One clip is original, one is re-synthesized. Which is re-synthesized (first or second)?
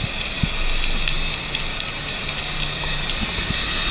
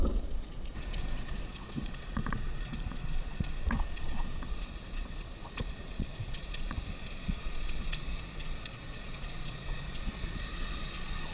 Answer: second